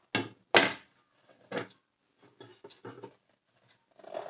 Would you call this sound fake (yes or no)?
no